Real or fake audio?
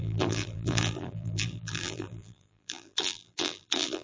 fake